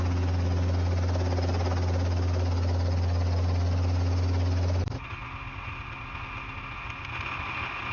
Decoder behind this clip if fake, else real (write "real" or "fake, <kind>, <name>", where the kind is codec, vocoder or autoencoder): real